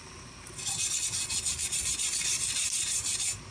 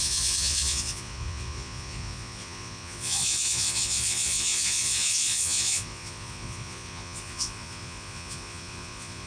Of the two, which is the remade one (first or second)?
second